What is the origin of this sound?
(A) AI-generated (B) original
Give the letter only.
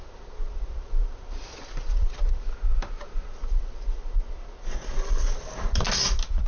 B